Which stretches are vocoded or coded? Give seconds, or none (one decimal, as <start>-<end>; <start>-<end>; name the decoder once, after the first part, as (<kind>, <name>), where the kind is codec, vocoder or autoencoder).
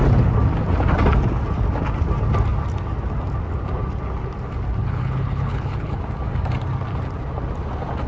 4.8-6.0 (codec, HILCodec)